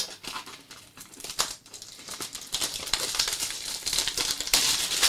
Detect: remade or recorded remade